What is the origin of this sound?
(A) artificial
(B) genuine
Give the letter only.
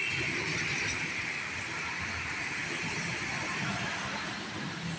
B